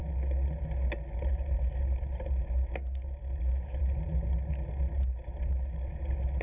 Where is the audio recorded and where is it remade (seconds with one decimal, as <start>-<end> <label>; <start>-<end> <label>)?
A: 0.0-6.4 recorded